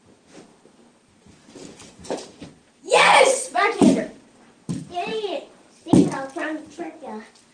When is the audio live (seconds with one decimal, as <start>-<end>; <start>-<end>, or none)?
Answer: 0.0-0.5; 4.2-5.1; 5.9-7.5